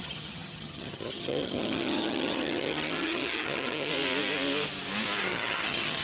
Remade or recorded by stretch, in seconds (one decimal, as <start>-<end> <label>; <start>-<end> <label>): 0.0-3.9 remade; 3.9-5.2 recorded; 5.2-6.0 remade